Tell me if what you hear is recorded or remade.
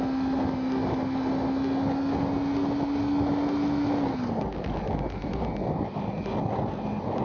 recorded